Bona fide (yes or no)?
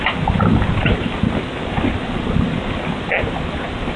yes